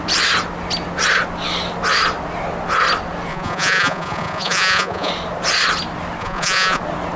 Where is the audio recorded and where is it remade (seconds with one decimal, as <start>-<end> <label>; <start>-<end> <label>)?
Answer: 0.0-3.3 recorded; 3.3-5.1 remade; 5.1-6.2 recorded; 6.2-6.8 remade; 6.8-7.2 recorded